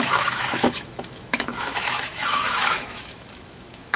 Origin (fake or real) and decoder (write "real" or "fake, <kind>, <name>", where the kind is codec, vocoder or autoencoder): fake, autoencoder, DAC-VAE